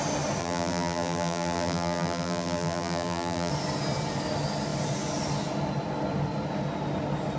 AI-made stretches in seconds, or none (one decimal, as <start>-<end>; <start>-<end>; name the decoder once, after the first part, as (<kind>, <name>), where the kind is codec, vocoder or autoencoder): 0.4-3.5 (vocoder, BigVGAN v2)